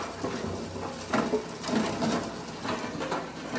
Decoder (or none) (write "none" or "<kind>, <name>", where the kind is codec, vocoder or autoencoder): none